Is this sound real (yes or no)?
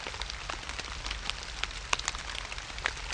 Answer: yes